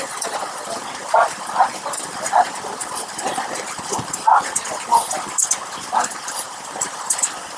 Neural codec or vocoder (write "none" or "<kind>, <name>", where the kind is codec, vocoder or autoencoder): none